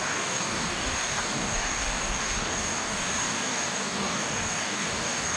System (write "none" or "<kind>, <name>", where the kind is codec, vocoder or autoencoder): codec, DAC